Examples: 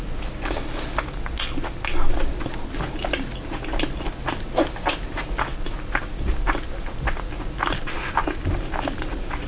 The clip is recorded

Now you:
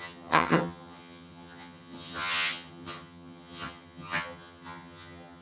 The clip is remade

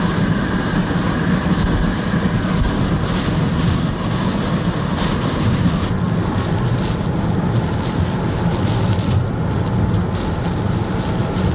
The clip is recorded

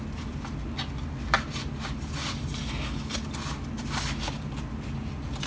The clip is recorded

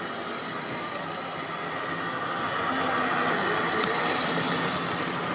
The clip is recorded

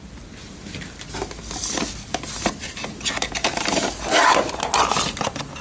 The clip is recorded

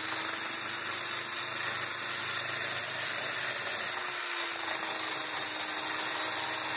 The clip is recorded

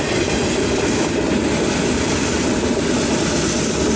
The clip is recorded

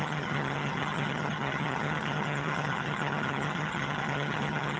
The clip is remade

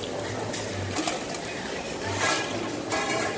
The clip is recorded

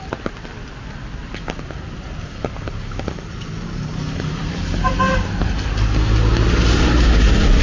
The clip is recorded